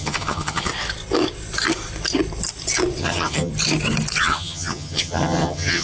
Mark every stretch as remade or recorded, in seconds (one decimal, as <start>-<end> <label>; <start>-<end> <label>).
0.0-0.7 remade; 0.7-3.0 recorded; 3.0-3.5 remade; 3.5-4.2 recorded; 4.2-5.8 remade